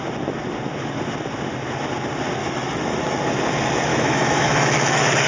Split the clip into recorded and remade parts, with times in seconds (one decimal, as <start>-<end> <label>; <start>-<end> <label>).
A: 0.0-2.4 recorded; 2.4-3.2 remade; 3.2-3.9 recorded; 3.9-5.3 remade